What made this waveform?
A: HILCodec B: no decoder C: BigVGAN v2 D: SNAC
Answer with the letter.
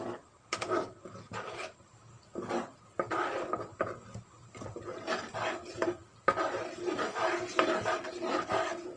B